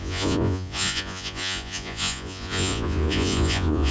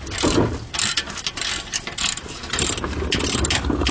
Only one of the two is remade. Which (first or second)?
first